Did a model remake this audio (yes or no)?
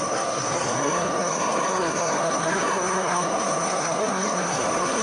yes